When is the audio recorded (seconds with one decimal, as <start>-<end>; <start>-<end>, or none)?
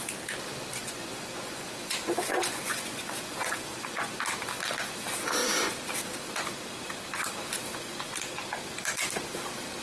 0.0-0.8; 4.2-7.7; 8.5-9.8